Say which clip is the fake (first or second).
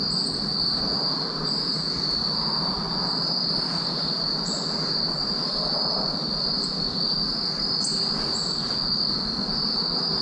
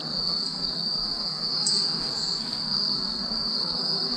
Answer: second